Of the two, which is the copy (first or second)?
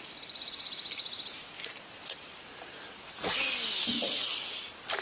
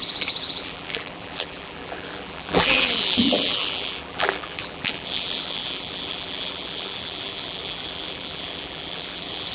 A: second